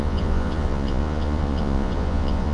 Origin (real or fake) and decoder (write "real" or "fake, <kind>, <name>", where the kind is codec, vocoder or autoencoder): fake, vocoder, Vocos